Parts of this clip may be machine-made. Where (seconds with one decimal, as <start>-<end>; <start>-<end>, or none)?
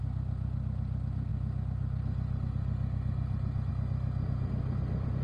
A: none